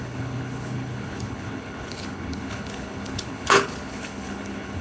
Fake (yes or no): yes